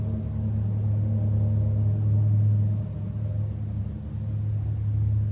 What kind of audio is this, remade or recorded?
recorded